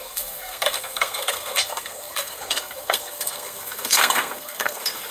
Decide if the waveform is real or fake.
fake